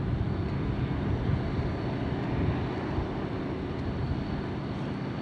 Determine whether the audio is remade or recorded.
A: recorded